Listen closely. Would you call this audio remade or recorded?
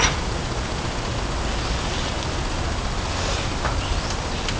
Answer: recorded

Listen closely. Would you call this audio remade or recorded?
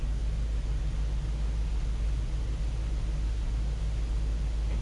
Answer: recorded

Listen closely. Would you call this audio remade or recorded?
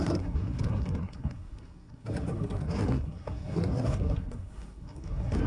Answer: remade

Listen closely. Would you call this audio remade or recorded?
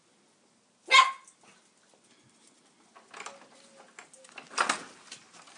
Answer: recorded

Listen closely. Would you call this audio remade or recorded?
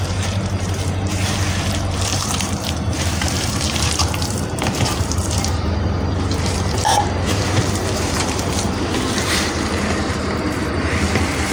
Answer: remade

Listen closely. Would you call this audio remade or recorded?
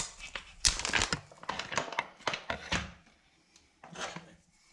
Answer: recorded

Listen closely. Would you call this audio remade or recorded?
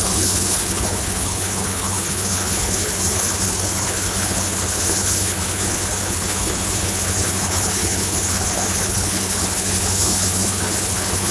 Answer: remade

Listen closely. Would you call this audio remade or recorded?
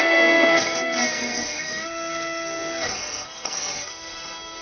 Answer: remade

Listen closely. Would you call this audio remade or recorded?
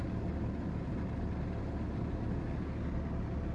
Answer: recorded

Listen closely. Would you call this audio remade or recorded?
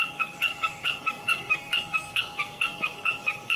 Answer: remade